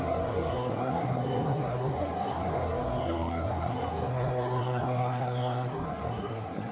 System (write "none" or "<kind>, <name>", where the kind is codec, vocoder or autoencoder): codec, SNAC